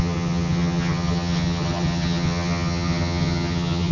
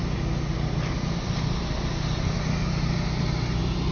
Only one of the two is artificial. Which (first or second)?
first